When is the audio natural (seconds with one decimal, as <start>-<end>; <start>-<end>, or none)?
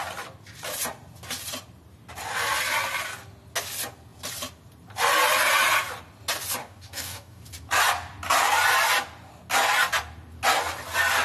0.0-6.6; 7.4-11.2